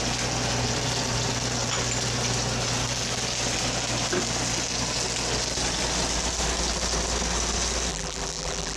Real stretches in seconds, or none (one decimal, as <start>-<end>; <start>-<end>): 0.0-7.9